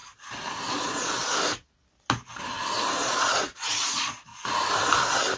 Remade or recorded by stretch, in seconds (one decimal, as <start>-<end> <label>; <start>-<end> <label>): 0.0-0.7 recorded; 0.7-1.2 remade; 1.2-3.0 recorded; 3.0-4.3 remade; 4.3-5.4 recorded